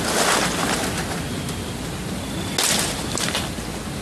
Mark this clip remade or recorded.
recorded